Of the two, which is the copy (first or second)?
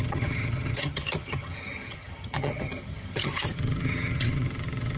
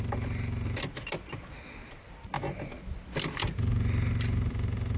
first